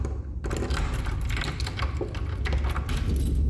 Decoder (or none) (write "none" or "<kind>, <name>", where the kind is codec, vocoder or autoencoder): none